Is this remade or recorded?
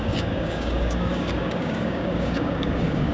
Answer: remade